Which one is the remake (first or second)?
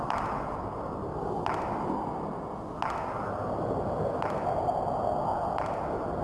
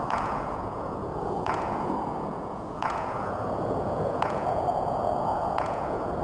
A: second